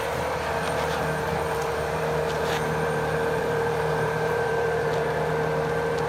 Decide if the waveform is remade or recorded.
remade